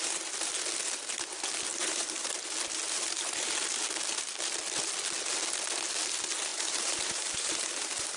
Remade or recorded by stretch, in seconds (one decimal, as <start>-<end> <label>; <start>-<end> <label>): 0.0-1.7 recorded; 1.7-2.3 remade; 2.3-6.5 recorded; 6.5-8.2 remade